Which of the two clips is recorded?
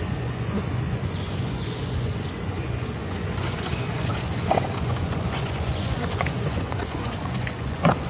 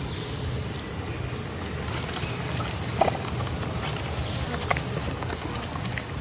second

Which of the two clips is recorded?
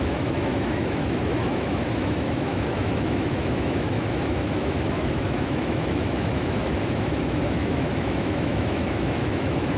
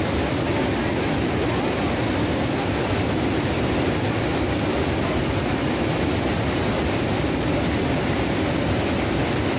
second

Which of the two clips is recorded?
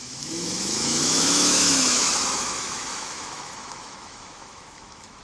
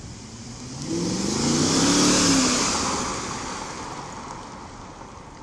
second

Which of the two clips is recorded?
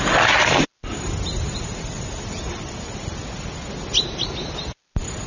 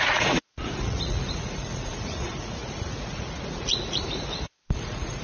first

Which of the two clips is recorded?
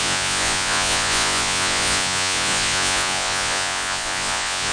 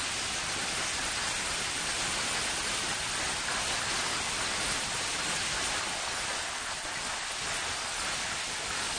second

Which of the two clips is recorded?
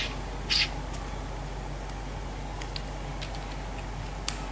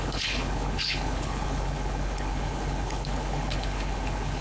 first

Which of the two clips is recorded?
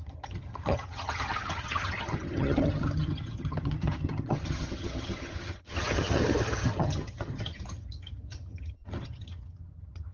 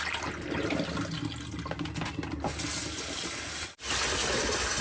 second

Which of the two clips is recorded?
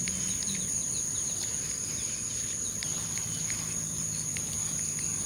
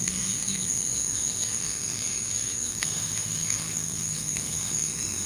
first